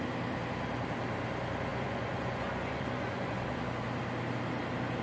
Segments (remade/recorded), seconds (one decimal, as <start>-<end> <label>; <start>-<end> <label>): 0.0-1.7 recorded; 1.7-3.6 remade; 3.6-5.0 recorded